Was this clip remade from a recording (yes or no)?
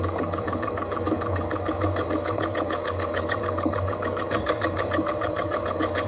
yes